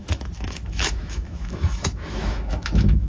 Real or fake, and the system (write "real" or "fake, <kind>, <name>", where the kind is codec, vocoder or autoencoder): fake, autoencoder, DAC-VAE